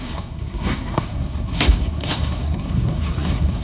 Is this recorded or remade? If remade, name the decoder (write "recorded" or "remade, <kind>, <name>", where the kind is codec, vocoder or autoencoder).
remade, codec, SNAC